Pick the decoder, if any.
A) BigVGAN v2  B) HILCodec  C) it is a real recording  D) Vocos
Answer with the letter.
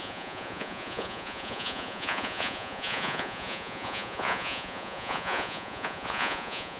D